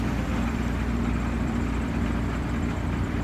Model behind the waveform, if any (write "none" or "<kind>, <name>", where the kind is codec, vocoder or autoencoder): vocoder, BigVGAN v2